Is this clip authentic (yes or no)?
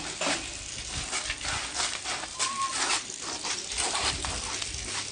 yes